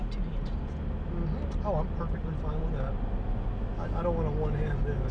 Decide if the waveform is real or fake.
real